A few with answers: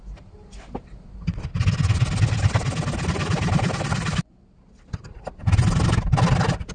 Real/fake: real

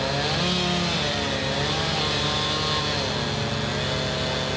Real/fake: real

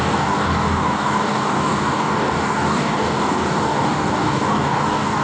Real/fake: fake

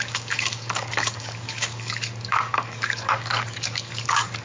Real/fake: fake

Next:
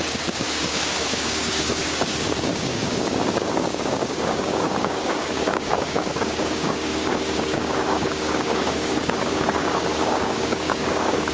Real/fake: fake